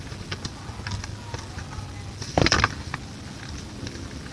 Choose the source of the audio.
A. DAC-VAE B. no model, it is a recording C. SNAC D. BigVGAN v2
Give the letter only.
D